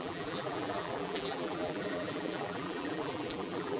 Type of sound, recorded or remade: remade